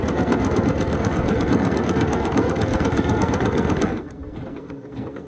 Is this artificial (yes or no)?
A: yes